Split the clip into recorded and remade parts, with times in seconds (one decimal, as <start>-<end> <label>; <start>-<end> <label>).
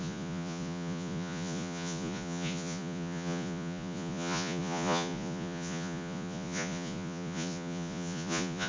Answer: 0.0-8.7 remade